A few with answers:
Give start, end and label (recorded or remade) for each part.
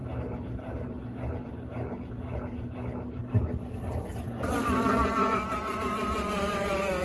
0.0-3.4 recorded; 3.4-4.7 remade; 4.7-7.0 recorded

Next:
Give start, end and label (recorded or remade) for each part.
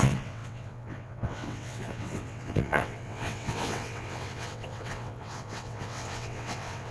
0.0-6.9 remade